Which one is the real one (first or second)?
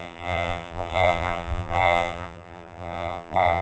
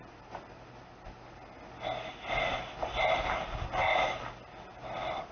second